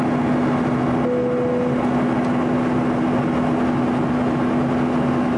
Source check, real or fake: real